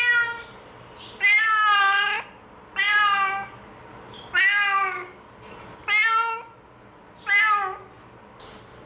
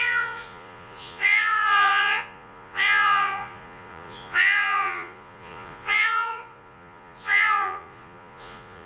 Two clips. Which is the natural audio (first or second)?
first